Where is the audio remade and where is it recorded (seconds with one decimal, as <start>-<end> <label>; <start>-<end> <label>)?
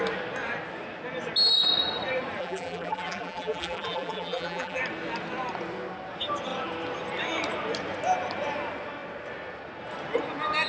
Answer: 0.0-2.4 recorded; 2.4-4.8 remade; 4.8-10.7 recorded